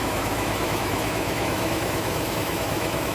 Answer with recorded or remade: remade